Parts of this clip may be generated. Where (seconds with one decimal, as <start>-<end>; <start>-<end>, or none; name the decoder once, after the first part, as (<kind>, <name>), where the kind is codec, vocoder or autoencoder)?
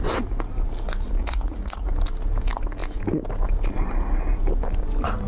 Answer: 1.2-1.9 (vocoder, Vocos)